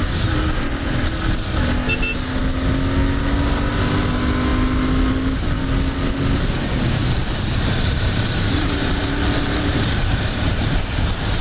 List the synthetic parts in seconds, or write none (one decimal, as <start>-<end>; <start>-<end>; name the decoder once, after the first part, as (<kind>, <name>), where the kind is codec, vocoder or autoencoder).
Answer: 7.0-10.9 (vocoder, BigVGAN v2)